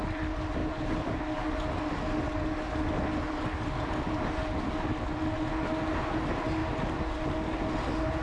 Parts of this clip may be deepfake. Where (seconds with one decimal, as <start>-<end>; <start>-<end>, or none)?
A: none

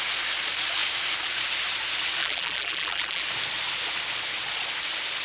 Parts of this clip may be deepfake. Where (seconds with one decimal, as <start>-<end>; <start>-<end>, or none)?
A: 2.2-3.2